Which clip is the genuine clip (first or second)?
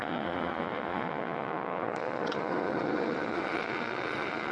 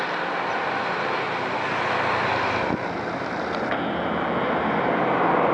second